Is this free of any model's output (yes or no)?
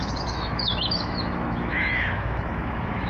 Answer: no